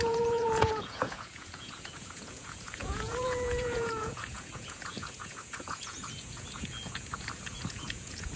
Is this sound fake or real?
fake